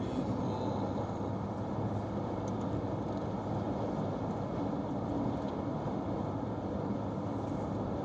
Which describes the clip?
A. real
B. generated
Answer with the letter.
A